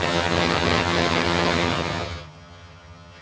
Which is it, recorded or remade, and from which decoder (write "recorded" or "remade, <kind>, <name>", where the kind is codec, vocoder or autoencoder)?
remade, vocoder, HiFi-GAN